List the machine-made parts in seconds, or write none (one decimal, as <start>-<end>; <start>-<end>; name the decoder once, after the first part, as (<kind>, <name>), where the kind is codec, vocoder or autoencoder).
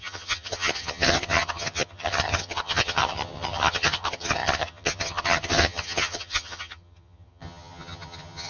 0.0-8.5 (vocoder, HiFi-GAN)